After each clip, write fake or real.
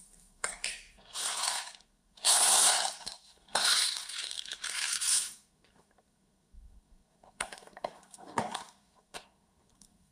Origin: fake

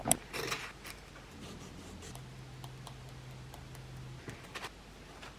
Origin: fake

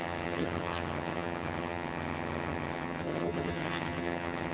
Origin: fake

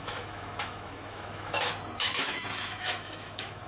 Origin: fake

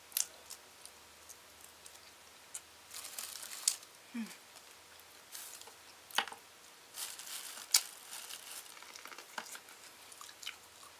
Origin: real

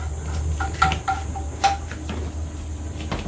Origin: real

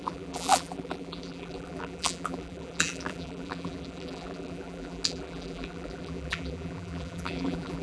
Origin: fake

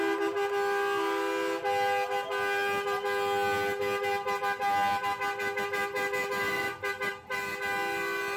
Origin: real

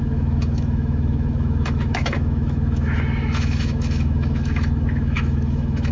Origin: fake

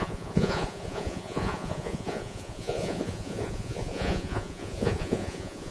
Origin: fake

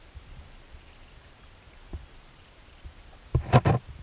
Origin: fake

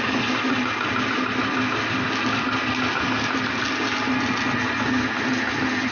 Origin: real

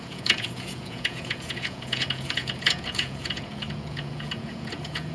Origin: fake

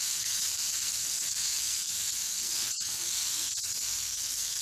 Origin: fake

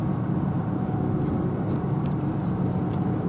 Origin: fake